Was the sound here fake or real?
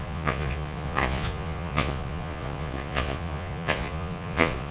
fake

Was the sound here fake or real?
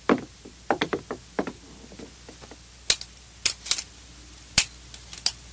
real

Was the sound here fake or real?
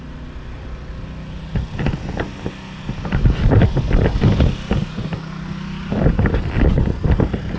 real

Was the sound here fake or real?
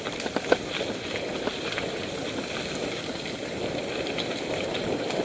real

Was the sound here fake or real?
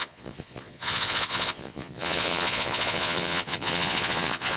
fake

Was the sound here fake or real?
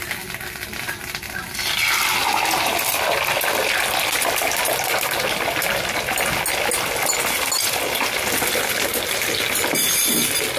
real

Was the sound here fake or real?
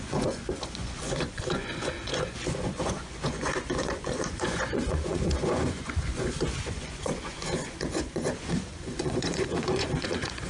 fake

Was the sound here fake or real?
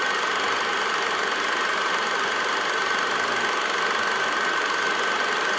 real